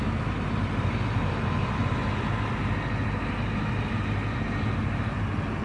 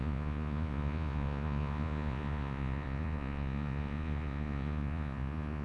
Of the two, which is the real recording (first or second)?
first